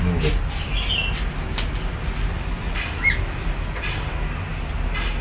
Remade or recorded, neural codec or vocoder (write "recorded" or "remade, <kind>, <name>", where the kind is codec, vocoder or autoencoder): recorded